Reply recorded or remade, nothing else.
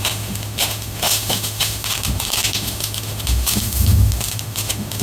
remade